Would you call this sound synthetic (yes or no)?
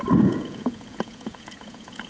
yes